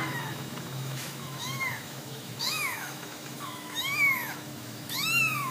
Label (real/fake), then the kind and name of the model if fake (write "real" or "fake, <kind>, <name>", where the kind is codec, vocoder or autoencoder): fake, autoencoder, DAC-VAE